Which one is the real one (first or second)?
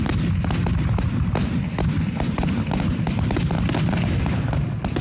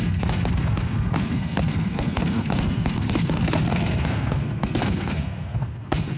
first